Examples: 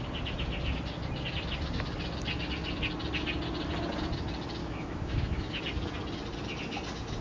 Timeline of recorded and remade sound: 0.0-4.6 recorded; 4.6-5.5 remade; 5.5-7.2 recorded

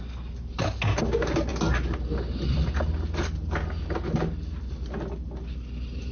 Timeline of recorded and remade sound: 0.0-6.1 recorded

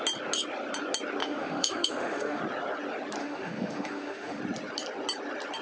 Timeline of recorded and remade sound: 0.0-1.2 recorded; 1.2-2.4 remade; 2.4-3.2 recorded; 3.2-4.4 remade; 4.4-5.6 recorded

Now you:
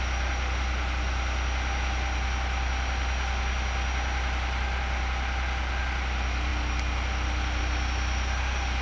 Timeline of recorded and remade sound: 0.0-8.8 recorded

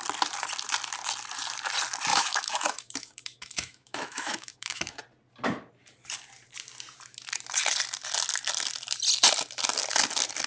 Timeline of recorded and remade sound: 0.0-2.1 recorded; 2.1-5.0 remade; 5.0-10.5 recorded

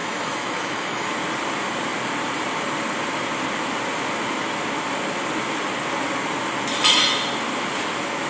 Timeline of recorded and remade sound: 0.0-1.1 remade; 1.1-8.3 recorded

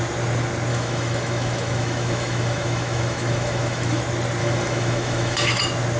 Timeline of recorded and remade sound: 0.0-0.7 recorded; 0.7-4.0 remade; 4.0-4.4 recorded; 4.4-5.6 remade; 5.6-6.0 recorded